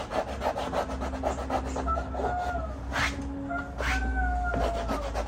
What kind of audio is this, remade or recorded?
recorded